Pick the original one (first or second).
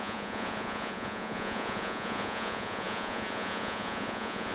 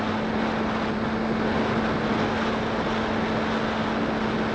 second